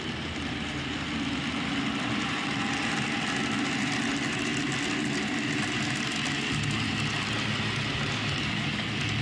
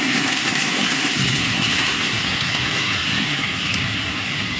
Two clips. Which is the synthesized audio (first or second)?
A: second